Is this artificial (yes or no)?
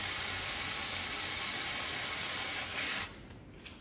no